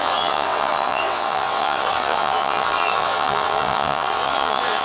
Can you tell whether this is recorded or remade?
remade